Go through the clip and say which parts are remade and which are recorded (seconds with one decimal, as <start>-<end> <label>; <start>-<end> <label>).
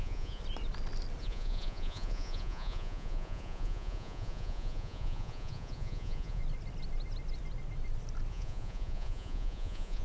0.0-0.4 remade; 0.4-1.2 recorded; 1.2-6.4 remade; 6.4-8.3 recorded; 8.3-10.0 remade